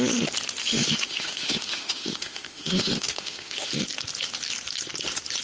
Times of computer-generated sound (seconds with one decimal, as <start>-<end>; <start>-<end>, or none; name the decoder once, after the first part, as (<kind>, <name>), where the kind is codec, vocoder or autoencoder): 0.6-3.7 (autoencoder, DAC-VAE)